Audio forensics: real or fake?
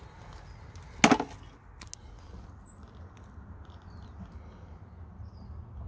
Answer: real